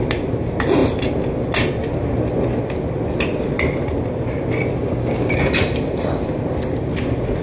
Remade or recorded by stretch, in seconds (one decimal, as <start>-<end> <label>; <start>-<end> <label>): 0.0-4.8 recorded; 4.8-5.4 remade; 5.4-7.4 recorded